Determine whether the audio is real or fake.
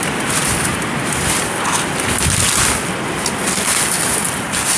real